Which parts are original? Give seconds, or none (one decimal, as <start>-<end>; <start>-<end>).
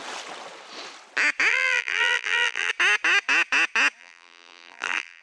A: 0.0-1.5; 2.7-4.0